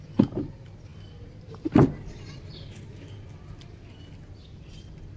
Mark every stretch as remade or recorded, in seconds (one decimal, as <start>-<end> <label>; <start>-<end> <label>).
0.0-5.2 recorded